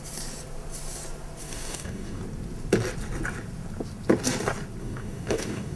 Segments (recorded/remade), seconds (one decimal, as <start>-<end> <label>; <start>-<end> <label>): 0.0-1.4 recorded; 1.4-2.2 remade; 2.2-4.8 recorded; 4.8-5.8 remade